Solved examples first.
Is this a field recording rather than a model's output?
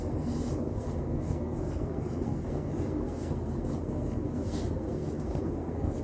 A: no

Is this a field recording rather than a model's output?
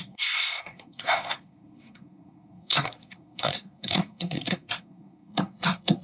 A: no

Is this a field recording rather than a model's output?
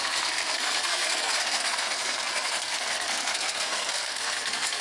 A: no